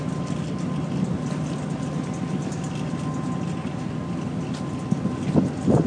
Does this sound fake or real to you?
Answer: real